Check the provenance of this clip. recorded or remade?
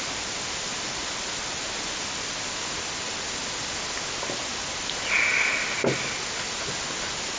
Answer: recorded